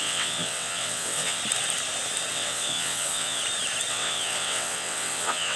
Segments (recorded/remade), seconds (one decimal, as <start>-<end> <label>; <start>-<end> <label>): 0.0-1.4 remade; 1.4-2.3 recorded; 2.3-3.4 remade; 3.4-3.9 recorded; 3.9-5.6 remade